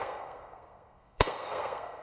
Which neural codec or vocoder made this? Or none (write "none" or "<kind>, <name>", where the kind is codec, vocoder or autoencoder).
codec, SNAC